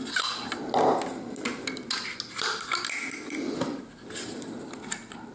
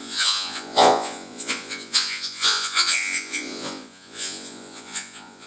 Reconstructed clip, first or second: second